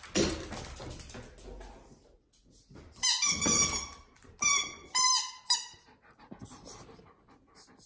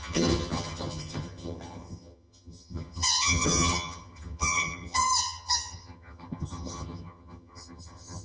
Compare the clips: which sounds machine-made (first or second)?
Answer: second